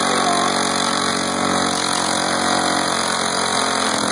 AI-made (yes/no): no